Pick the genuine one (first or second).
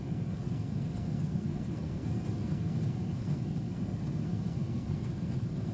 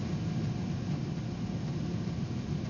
second